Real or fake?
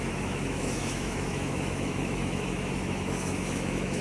fake